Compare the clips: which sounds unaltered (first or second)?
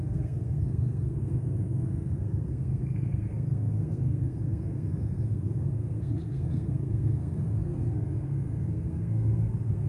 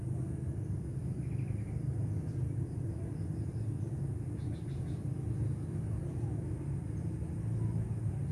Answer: second